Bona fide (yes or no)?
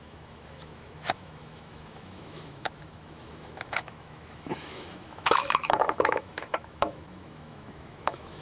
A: no